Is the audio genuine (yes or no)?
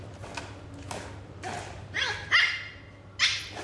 yes